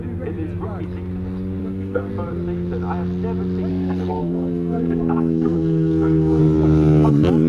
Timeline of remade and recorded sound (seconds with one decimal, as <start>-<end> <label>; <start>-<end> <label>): 0.0-1.6 recorded; 1.6-2.1 remade; 2.1-3.7 recorded; 3.7-6.4 remade; 6.4-7.5 recorded